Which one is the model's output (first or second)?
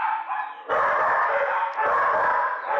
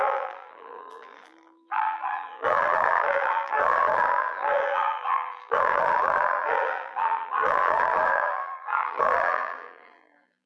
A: second